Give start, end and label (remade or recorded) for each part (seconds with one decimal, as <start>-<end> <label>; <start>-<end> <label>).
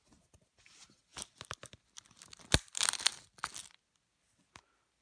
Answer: 0.0-5.0 recorded